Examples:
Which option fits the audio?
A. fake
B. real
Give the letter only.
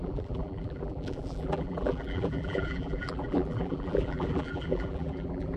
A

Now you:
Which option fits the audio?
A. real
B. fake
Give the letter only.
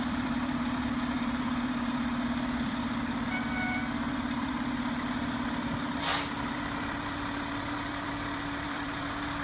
B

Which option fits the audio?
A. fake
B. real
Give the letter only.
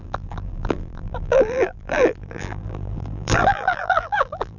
A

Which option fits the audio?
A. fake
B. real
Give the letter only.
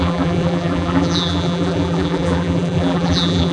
A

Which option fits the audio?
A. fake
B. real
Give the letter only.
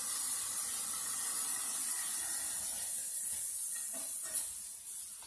B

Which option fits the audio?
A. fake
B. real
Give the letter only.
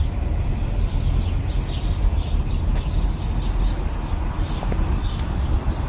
B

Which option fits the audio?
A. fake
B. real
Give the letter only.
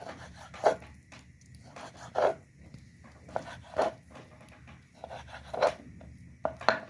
B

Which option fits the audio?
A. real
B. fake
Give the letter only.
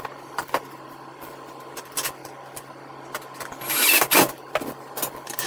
A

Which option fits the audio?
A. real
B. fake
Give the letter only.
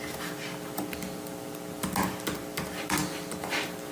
A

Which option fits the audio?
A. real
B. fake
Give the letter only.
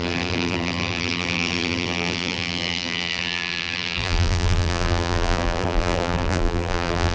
B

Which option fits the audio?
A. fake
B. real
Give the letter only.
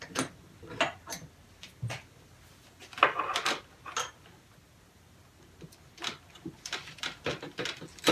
B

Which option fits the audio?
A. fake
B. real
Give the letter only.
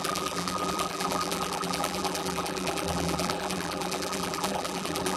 A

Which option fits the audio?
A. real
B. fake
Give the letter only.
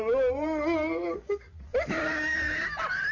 B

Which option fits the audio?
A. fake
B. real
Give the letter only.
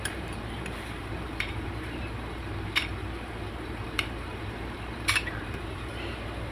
A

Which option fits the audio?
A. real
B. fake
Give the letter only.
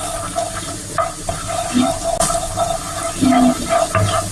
A